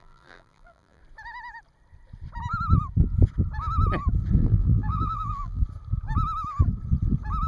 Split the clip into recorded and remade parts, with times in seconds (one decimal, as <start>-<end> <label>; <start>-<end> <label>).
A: 0.0-1.0 remade; 1.0-4.4 recorded; 4.4-5.6 remade; 5.6-7.5 recorded